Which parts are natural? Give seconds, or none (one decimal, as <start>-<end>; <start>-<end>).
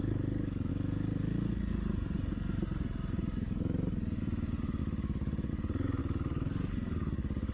0.7-4.8; 5.5-6.0